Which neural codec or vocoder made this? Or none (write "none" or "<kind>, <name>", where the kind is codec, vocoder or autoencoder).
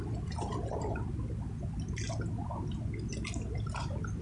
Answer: none